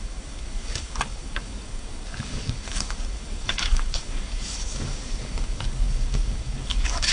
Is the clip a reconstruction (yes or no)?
yes